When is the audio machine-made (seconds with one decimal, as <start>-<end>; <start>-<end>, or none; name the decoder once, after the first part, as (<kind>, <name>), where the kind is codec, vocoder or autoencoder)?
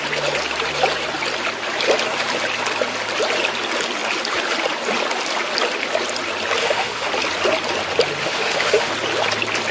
6.6-7.1 (autoencoder, DAC-VAE); 8.2-8.9